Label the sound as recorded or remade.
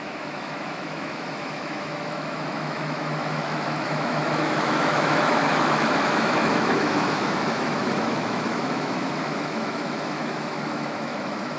remade